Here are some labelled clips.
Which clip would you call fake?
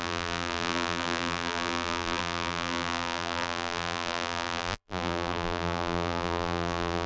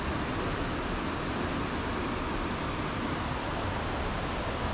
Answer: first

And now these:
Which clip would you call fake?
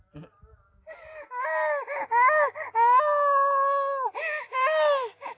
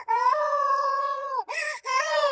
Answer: second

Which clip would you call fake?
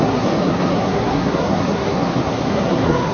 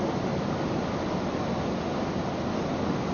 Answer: first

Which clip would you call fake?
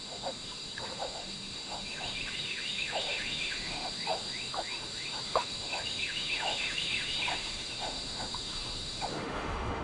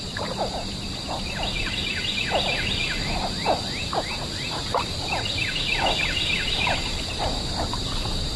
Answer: first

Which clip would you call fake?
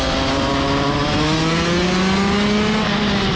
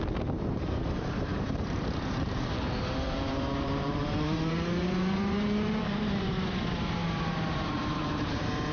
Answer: second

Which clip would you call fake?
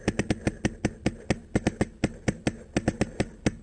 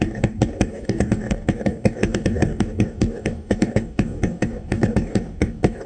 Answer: second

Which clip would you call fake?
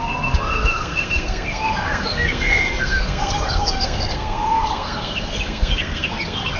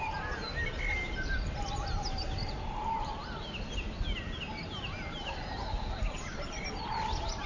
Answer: first